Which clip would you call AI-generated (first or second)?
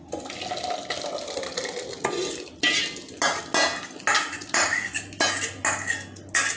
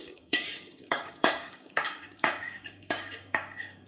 second